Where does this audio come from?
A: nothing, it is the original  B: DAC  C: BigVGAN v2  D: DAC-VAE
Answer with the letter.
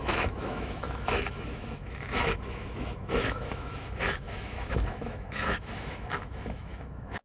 D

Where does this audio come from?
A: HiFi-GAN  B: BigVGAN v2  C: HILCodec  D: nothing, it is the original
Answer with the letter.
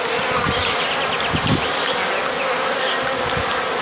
D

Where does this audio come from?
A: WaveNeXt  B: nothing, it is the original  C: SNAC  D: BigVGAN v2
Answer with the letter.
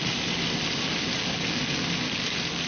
B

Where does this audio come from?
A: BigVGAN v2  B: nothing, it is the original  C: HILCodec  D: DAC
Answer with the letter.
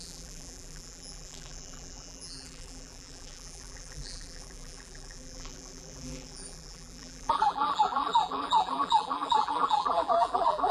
A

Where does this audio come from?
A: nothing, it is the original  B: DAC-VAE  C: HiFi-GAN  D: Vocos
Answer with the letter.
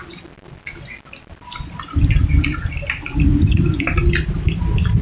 A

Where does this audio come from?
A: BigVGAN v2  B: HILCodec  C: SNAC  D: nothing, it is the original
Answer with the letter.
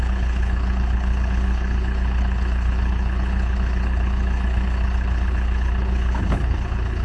B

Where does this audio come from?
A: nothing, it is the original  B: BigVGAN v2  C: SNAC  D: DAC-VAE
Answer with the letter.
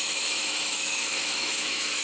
D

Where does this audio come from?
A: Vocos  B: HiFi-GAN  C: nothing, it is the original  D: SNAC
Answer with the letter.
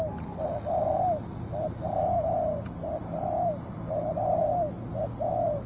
C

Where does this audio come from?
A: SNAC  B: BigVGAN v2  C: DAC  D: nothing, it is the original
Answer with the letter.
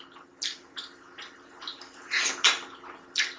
D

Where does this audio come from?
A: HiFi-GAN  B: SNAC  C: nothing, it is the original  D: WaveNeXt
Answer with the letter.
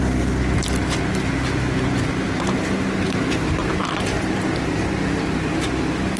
C